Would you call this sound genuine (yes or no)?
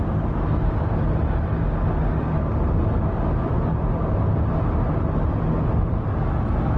yes